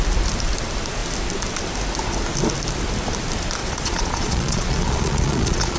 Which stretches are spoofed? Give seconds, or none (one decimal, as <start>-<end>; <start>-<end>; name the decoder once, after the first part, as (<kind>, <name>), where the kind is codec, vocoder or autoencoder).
3.6-5.8 (vocoder, Vocos)